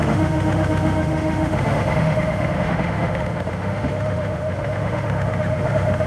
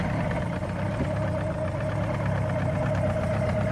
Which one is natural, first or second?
second